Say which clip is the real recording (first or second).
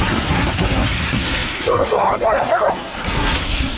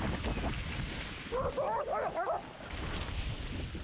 second